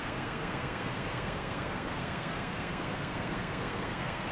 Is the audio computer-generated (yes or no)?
yes